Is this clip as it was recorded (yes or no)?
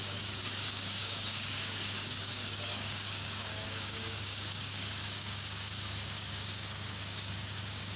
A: no